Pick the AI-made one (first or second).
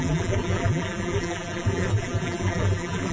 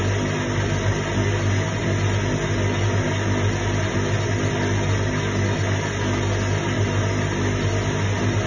first